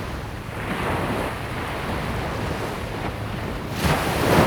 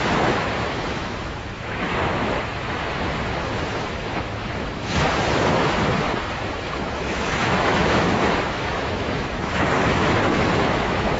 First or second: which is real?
first